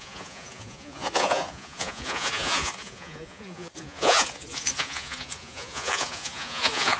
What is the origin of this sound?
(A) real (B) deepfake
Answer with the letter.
B